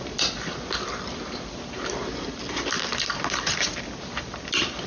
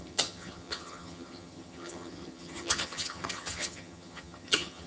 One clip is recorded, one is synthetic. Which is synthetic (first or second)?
second